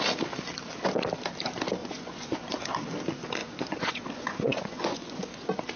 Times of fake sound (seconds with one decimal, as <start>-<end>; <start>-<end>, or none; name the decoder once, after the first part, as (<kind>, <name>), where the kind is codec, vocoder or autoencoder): 1.8-2.6 (vocoder, Vocos); 3.4-5.2